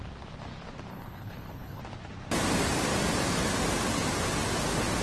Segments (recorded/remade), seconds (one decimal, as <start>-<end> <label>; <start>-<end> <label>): 0.0-0.9 recorded; 0.9-1.8 remade; 1.8-5.0 recorded